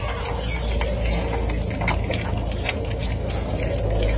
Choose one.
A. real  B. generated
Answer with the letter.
A